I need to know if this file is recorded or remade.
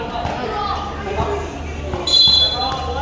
recorded